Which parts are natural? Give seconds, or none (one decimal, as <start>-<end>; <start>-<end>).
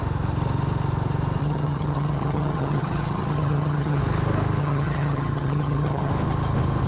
0.0-1.4; 4.0-4.6; 6.1-6.9